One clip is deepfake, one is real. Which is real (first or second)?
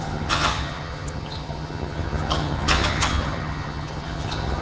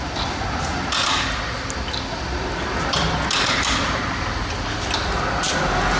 second